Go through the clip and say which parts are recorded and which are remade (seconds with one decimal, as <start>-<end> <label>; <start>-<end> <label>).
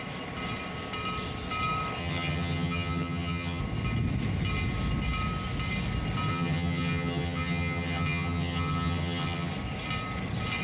0.0-2.0 recorded; 2.0-3.6 remade; 3.6-6.3 recorded; 6.3-9.5 remade; 9.5-10.6 recorded